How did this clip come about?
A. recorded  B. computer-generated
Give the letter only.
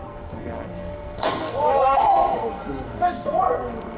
B